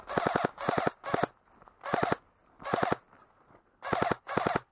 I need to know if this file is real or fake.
real